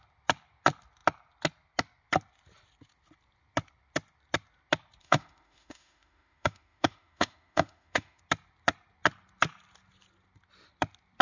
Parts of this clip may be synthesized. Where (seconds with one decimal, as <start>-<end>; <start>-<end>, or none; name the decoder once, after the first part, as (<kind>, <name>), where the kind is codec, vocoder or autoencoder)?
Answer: 5.0-8.2 (autoencoder, DAC-VAE)